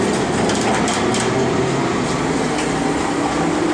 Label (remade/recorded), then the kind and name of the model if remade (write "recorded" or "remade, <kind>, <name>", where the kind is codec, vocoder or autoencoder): recorded